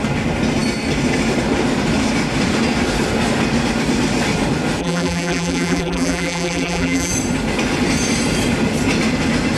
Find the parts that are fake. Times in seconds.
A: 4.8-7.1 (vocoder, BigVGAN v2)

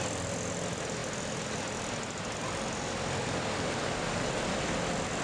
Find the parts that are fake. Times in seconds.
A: none

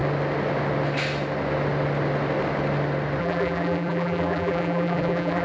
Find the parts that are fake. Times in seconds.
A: 3.2-5.4 (vocoder, BigVGAN v2)

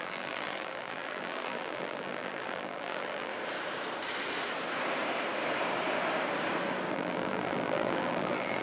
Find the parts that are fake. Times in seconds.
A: 0.0-3.3 (vocoder, BigVGAN v2); 6.9-8.6

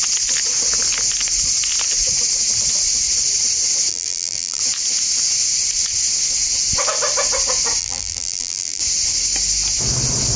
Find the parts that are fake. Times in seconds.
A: 3.9-4.6 (vocoder, BigVGAN v2); 7.8-8.8